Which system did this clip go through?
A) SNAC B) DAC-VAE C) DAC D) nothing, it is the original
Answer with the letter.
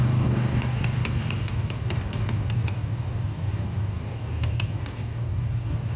C